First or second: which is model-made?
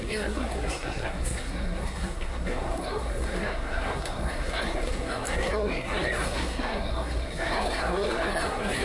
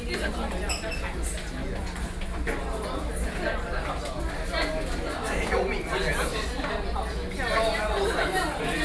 first